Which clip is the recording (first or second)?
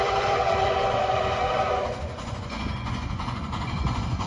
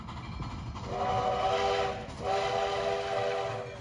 second